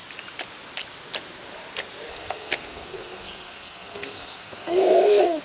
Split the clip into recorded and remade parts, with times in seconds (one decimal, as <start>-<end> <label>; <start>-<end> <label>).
0.0-2.1 recorded; 2.1-5.4 remade